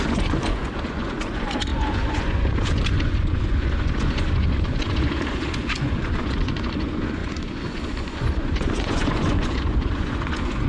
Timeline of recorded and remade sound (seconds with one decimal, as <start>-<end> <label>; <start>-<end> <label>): 0.0-10.7 remade